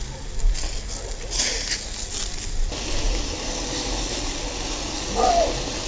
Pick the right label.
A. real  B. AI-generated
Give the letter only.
A